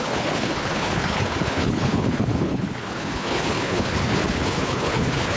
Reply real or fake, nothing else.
fake